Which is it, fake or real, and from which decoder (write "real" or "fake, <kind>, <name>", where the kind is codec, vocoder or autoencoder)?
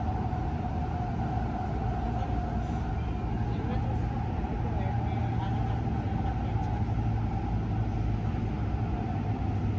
real